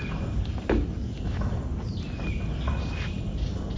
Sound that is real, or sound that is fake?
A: real